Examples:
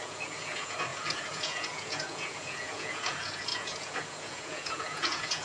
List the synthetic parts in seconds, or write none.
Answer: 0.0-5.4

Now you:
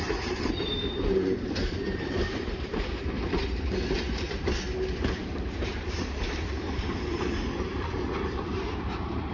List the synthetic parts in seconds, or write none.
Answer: 0.0-3.4; 4.9-9.3

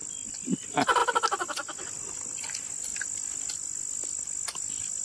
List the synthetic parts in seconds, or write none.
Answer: none

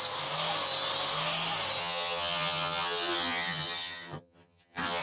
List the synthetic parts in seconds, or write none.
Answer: 1.8-5.0

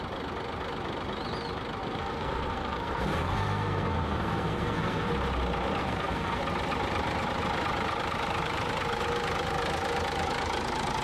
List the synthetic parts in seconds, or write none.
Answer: 1.8-5.1; 5.8-6.4